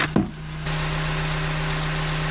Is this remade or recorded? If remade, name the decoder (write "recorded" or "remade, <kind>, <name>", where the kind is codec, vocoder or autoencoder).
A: recorded